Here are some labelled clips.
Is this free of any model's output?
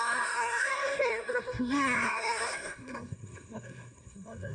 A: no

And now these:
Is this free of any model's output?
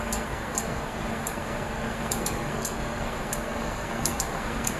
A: no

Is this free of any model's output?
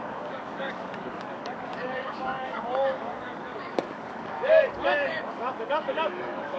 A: no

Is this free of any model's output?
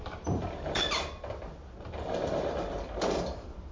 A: yes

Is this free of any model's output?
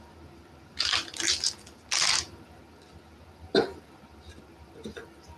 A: yes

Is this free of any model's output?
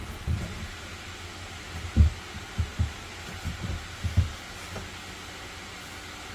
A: yes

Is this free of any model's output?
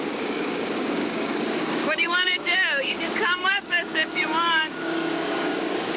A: no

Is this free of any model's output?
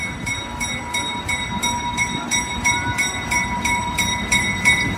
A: no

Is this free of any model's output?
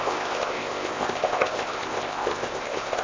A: no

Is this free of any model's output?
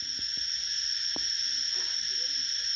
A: yes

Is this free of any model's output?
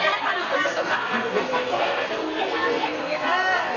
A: no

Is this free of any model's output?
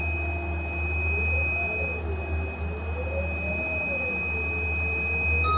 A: yes